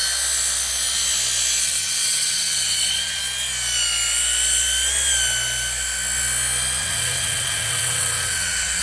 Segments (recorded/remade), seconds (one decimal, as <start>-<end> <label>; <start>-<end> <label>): 0.0-1.6 recorded; 1.6-3.2 remade; 3.2-6.8 recorded; 6.8-8.8 remade